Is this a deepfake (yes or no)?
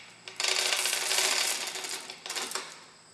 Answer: no